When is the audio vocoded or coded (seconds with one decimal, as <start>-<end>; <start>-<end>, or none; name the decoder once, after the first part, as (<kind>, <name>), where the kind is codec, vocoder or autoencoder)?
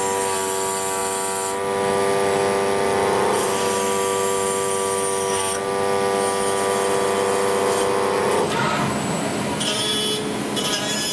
none